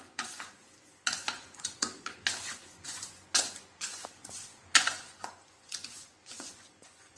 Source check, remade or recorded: remade